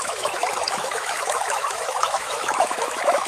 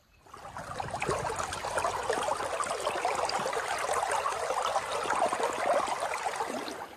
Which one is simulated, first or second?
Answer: first